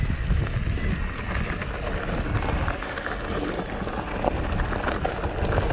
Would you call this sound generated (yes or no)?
no